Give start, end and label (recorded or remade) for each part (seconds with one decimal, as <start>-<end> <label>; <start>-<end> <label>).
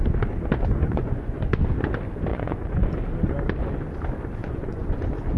0.0-0.8 recorded; 0.8-1.6 remade; 1.6-2.3 recorded; 2.3-2.9 remade; 2.9-4.4 recorded; 4.4-5.0 remade; 5.0-5.4 recorded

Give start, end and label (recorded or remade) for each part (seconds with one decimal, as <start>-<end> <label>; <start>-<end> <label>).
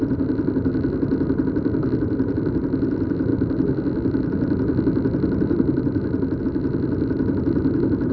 0.0-8.1 recorded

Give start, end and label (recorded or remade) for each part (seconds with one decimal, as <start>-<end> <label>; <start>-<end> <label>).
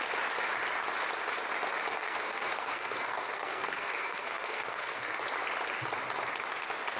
0.0-1.9 recorded; 1.9-5.2 remade; 5.2-7.0 recorded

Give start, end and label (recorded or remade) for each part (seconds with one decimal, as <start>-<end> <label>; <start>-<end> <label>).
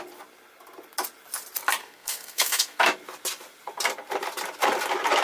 0.0-1.8 recorded; 1.8-2.8 remade; 2.8-5.2 recorded